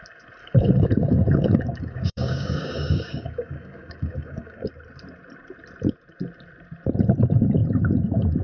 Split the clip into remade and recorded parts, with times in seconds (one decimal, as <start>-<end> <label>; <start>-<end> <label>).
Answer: 0.0-0.4 recorded; 0.4-4.7 remade; 4.7-8.4 recorded